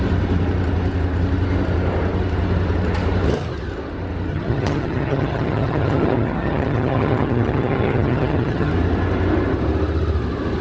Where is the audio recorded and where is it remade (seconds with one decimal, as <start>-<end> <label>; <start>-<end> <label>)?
0.0-4.3 recorded; 4.3-8.7 remade; 8.7-10.6 recorded